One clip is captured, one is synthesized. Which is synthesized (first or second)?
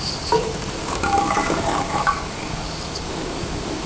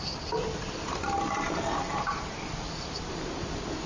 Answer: first